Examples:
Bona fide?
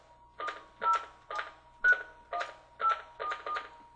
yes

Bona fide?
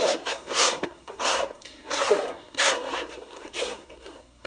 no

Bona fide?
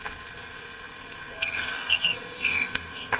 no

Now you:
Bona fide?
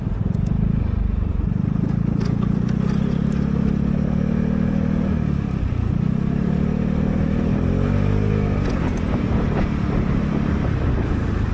yes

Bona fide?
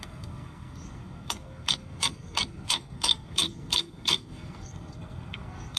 no